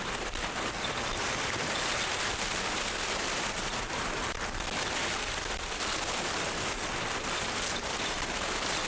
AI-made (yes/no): yes